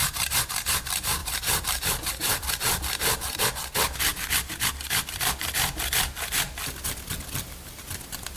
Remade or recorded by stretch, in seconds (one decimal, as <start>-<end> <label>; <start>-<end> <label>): 0.0-1.2 recorded; 1.2-3.4 remade; 3.4-8.4 recorded